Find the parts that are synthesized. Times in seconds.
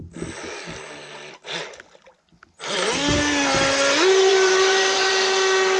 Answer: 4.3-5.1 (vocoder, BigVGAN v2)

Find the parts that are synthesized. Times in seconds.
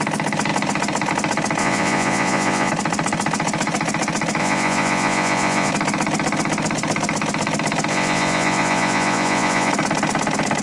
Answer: 1.6-2.7 (vocoder, Vocos); 4.4-5.7; 7.9-9.7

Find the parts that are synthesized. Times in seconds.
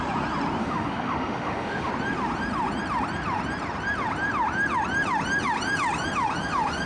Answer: 0.6-1.9 (autoencoder, DAC-VAE)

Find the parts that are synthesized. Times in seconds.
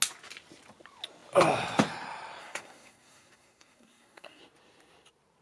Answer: 2.4-4.4 (codec, SNAC)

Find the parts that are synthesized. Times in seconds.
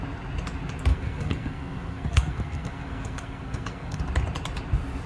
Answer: 0.9-4.0 (codec, SNAC)